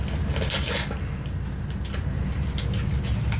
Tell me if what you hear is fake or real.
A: real